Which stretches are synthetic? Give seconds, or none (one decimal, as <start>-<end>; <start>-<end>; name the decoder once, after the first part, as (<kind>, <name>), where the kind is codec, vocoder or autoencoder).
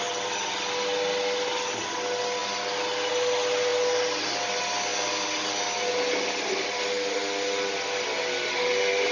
none